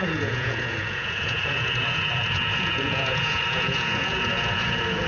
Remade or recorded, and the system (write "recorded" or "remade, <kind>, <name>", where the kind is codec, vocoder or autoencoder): remade, vocoder, Vocos